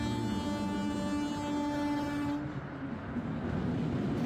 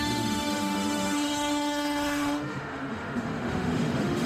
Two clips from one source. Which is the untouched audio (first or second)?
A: first